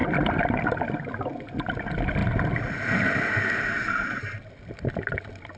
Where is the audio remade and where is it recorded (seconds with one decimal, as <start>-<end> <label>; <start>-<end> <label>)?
0.0-5.6 recorded